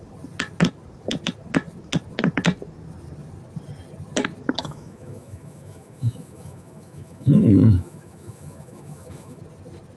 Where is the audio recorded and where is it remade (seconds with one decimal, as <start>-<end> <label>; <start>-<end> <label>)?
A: 0.0-4.6 recorded; 4.6-9.4 remade; 9.4-10.0 recorded